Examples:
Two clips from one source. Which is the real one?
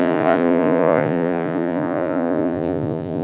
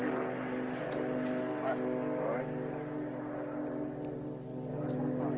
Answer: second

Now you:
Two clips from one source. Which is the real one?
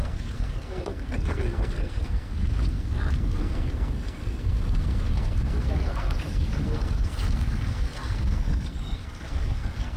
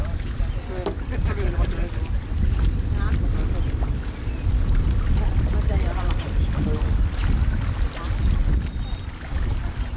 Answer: second